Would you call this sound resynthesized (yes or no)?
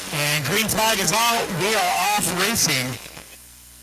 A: yes